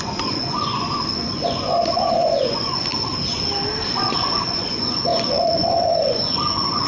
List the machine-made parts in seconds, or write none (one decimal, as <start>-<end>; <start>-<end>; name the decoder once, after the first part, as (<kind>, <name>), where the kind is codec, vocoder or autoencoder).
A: 0.0-2.9 (vocoder, Vocos); 3.9-6.9